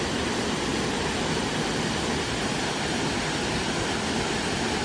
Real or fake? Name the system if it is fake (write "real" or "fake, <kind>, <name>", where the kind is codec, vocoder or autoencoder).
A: real